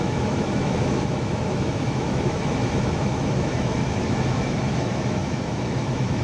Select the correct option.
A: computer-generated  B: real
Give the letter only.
A